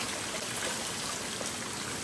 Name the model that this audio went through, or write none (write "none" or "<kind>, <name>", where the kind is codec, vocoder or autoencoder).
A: none